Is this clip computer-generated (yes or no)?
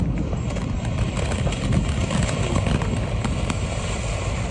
no